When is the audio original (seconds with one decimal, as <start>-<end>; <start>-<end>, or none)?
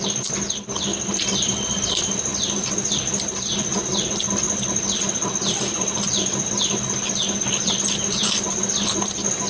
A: 0.0-9.5